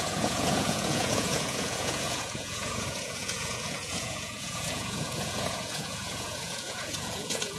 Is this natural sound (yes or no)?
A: no